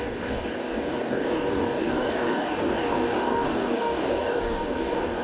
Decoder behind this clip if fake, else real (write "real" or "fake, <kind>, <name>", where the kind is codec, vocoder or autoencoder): fake, codec, DAC